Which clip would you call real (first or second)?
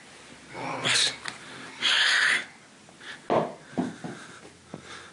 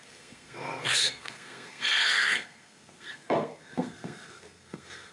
first